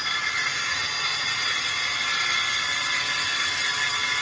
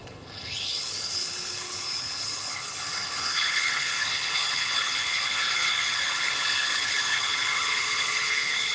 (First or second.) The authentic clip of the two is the first